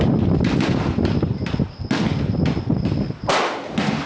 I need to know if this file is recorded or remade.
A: recorded